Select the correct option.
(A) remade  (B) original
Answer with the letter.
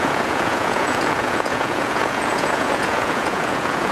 A